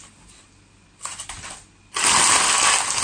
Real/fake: real